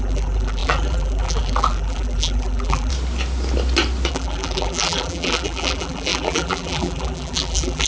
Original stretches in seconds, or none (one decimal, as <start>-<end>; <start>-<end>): 2.9-4.1